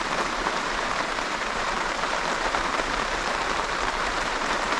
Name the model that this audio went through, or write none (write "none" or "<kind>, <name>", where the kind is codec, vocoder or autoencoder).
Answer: vocoder, BigVGAN v2